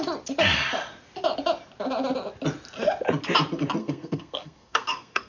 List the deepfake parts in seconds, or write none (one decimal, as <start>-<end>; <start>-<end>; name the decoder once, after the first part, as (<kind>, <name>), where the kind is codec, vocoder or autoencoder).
3.8-5.3 (codec, SNAC)

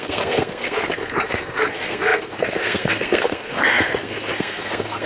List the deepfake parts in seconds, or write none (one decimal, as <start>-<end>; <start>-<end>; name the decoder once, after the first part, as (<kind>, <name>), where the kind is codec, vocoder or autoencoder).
0.0-5.1 (codec, SNAC)

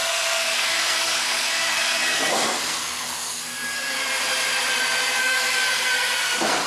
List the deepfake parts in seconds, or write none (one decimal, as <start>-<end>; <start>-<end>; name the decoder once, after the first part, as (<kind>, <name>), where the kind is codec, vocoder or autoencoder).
0.0-4.0 (codec, SNAC); 5.2-6.7

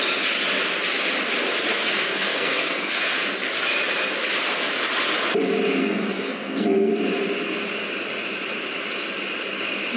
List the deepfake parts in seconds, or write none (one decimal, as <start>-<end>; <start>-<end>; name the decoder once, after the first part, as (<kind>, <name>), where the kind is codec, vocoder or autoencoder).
1.7-3.3 (codec, SNAC); 5.8-6.9

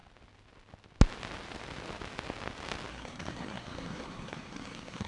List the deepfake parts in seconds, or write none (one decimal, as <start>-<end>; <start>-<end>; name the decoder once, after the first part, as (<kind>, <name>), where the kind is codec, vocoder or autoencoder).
2.9-5.1 (codec, SNAC)